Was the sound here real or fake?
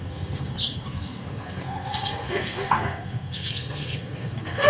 fake